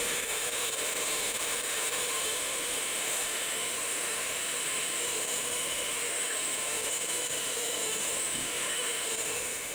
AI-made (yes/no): yes